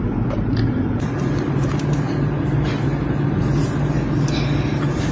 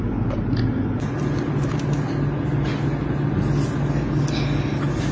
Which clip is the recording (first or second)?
second